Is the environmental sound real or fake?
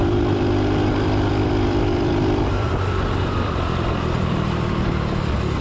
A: fake